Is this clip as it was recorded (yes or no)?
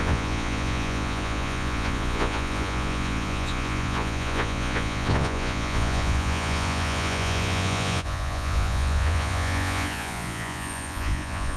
no